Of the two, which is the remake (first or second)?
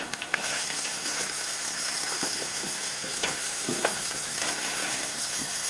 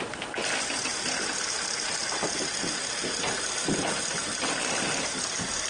first